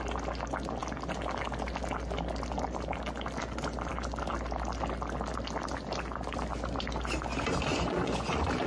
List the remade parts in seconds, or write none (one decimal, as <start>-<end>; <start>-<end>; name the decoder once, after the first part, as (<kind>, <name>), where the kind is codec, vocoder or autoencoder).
7.7-8.7 (vocoder, Vocos)